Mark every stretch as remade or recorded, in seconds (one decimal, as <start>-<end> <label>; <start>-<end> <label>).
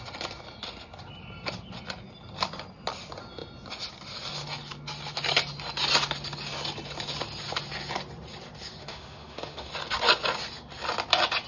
0.0-8.8 recorded; 8.8-9.7 remade; 9.7-11.5 recorded